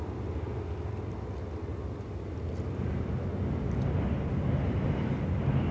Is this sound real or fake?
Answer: real